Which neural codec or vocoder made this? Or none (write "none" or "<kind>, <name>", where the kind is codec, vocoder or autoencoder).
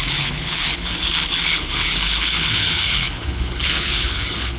codec, HILCodec